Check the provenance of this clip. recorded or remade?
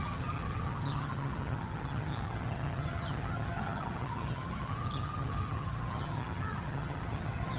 remade